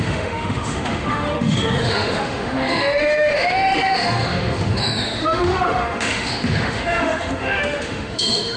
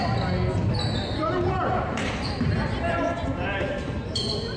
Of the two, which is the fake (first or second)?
first